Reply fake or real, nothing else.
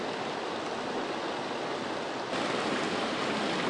real